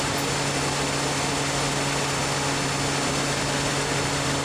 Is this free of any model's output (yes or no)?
yes